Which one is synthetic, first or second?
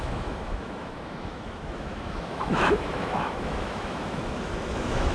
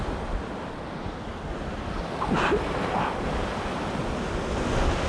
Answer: first